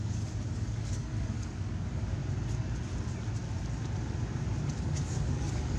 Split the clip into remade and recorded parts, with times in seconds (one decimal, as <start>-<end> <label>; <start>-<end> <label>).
0.0-2.2 remade; 2.2-4.8 recorded; 4.8-5.8 remade